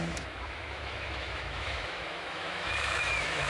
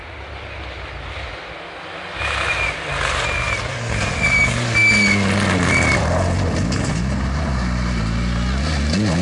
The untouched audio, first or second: second